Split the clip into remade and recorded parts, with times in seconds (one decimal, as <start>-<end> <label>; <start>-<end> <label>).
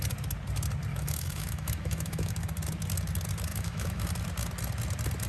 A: 0.0-0.9 recorded; 0.9-2.4 remade; 2.4-3.5 recorded; 3.5-4.1 remade; 4.1-5.3 recorded